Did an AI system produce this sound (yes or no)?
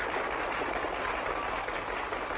no